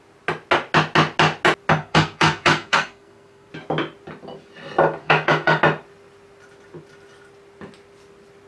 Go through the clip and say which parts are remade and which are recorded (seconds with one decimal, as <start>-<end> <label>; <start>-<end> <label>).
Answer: 0.0-1.8 recorded; 1.8-3.5 remade; 3.5-5.0 recorded; 5.0-5.6 remade; 5.6-8.5 recorded